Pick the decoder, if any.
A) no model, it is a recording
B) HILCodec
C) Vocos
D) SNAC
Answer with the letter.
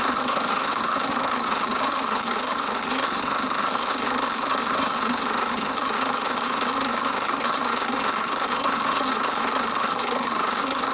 D